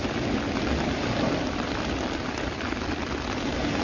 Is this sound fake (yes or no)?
no